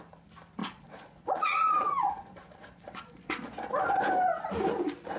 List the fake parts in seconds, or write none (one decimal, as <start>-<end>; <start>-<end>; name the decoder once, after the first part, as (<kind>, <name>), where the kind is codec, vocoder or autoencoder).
0.6-3.7 (vocoder, Vocos)